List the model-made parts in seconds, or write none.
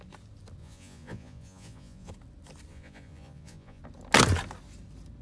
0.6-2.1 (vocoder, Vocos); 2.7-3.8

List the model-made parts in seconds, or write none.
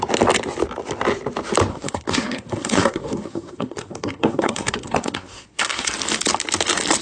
1.7-5.9 (codec, SNAC)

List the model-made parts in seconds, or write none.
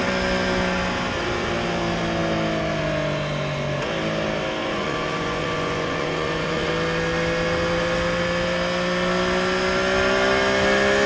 4.6-6.7 (vocoder, Vocos)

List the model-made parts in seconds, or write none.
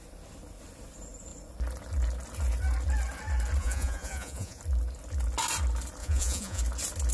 3.6-4.6 (vocoder, Vocos); 6.0-6.6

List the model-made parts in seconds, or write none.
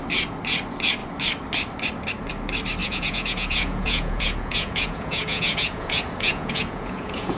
2.8-7.4 (vocoder, Vocos)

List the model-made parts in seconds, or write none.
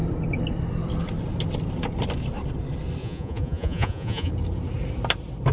3.0-4.3 (vocoder, Vocos)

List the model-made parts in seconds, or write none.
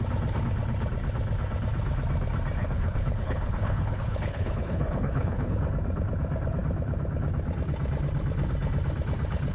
2.6-5.6 (codec, HILCodec)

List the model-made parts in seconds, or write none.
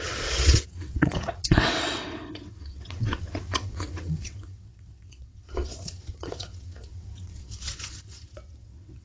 0.0-9.0 (vocoder, WaveNeXt)